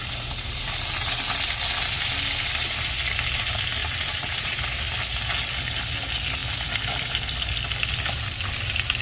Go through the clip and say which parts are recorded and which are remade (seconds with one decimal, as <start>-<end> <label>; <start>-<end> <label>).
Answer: 0.0-3.8 recorded; 3.8-4.6 remade; 4.6-9.0 recorded